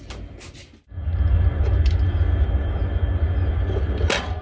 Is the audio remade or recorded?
recorded